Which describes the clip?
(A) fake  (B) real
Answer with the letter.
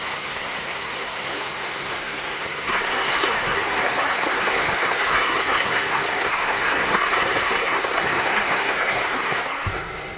A